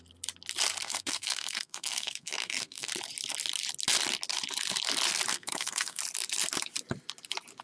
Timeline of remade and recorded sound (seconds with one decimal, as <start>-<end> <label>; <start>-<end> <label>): 0.0-0.8 recorded; 0.8-2.9 remade; 2.9-5.3 recorded; 5.3-6.0 remade; 6.0-7.6 recorded